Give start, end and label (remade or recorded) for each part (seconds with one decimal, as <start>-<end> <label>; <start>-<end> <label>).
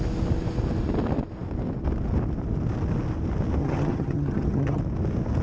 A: 0.0-3.6 recorded; 3.6-4.8 remade; 4.8-5.4 recorded